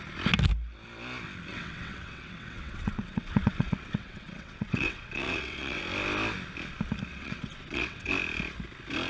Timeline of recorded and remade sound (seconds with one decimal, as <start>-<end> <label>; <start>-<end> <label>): 0.0-1.5 recorded; 1.5-5.8 remade; 5.8-7.1 recorded; 7.1-8.1 remade; 8.1-9.1 recorded